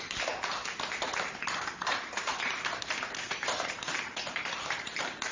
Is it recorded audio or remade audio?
remade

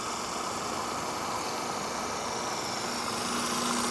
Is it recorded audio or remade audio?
recorded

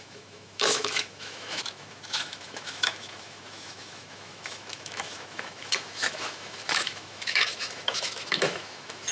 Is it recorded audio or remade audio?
remade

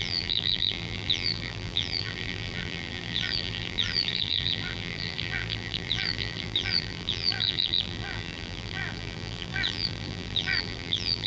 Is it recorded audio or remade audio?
remade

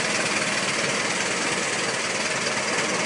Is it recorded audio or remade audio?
recorded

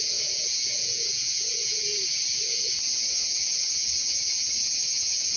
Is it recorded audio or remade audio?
remade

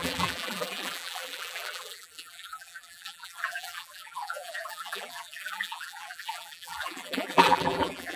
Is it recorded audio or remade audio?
remade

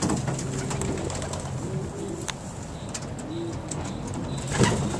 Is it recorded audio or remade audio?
recorded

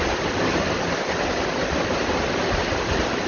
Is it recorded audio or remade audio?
recorded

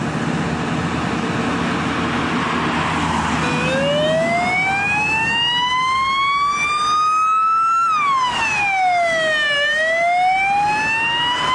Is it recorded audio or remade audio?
recorded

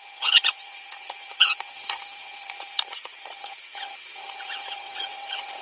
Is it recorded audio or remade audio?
remade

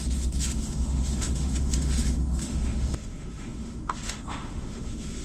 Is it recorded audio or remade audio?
remade